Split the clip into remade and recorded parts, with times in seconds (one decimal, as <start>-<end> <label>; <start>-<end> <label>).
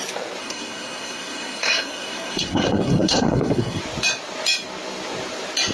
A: 0.0-0.4 recorded; 0.4-3.8 remade; 3.8-5.7 recorded